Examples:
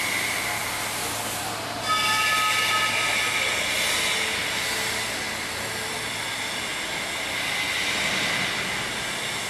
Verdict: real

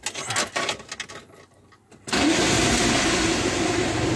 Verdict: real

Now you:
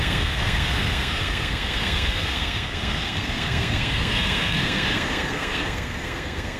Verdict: fake